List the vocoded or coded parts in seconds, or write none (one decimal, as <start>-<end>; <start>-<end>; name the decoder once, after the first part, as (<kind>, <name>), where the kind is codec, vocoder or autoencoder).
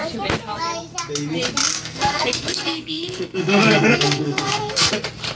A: 1.7-4.9 (codec, SNAC)